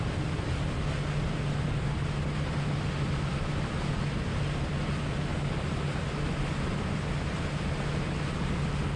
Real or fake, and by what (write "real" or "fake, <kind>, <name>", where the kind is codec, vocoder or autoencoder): real